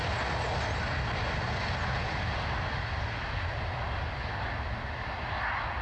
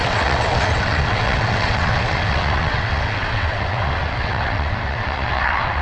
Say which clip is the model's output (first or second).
second